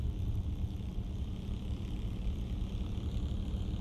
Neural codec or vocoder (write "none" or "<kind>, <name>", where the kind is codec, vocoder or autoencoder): vocoder, BigVGAN v2